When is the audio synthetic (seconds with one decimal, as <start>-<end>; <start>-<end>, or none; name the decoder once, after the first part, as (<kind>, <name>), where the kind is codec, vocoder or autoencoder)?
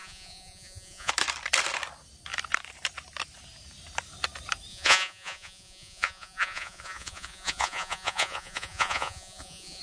0.0-1.1 (vocoder, Vocos); 4.7-9.8